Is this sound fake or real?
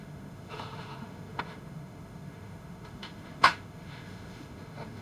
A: fake